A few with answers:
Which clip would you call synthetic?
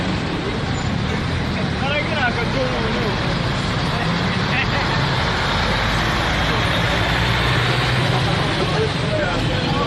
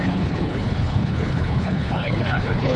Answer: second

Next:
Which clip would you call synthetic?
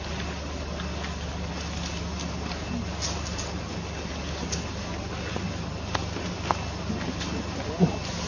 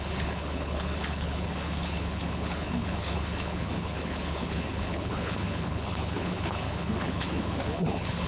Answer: second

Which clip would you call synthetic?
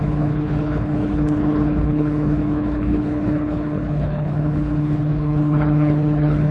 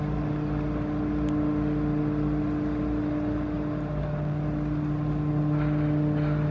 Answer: first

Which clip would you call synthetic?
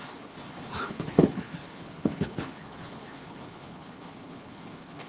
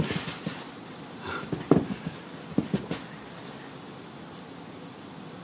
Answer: first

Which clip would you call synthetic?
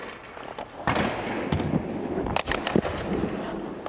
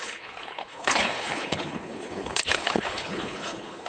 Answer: second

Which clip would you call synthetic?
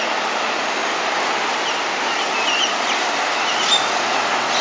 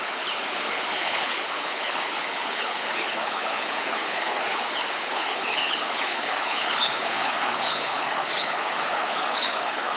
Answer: second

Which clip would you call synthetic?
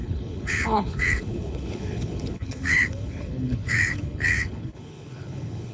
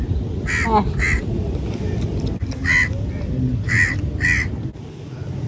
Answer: first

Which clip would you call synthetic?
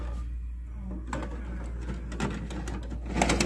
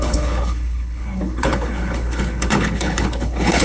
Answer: second